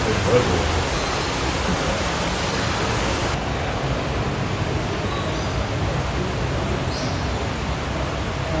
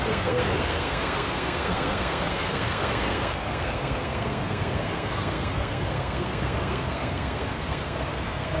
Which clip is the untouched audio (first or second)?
first